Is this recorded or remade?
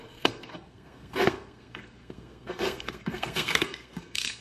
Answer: remade